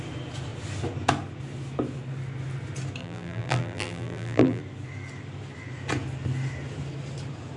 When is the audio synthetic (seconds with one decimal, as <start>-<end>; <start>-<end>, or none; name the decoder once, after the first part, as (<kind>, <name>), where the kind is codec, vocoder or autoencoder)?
3.0-4.6 (vocoder, BigVGAN v2)